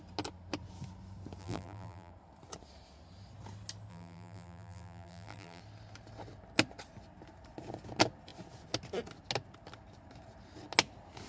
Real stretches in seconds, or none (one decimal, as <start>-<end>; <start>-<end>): 0.0-1.4; 2.1-3.9; 5.6-11.3